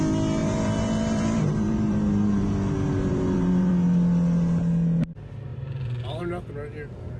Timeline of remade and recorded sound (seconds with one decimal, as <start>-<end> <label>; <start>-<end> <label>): 0.0-0.4 recorded; 0.4-2.5 remade; 2.5-3.1 recorded; 3.1-3.7 remade; 3.7-5.5 recorded; 5.5-6.2 remade; 6.2-7.2 recorded